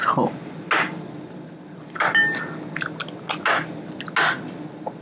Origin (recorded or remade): recorded